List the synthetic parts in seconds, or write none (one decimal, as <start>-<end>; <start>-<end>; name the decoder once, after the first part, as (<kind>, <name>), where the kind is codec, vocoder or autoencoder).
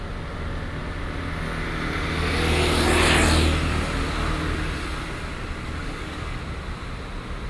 5.8-6.4 (codec, DAC)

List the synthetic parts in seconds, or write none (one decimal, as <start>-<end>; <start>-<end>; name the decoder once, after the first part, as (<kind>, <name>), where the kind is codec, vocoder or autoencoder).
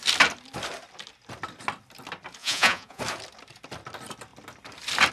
2.4-3.0 (vocoder, Vocos)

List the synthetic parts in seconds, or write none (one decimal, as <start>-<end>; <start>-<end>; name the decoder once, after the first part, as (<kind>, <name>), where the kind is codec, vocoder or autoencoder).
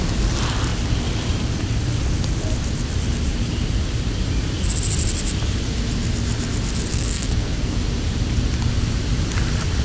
6.9-7.8 (codec, SNAC)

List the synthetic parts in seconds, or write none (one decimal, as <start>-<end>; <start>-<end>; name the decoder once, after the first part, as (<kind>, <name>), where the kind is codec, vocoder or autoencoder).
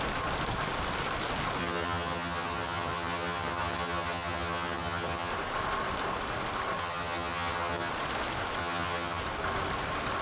1.6-5.3 (vocoder, HiFi-GAN); 6.8-7.9; 8.6-9.2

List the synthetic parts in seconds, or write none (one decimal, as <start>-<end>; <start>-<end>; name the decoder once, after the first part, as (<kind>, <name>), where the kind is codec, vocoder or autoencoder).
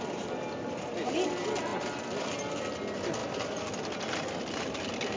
none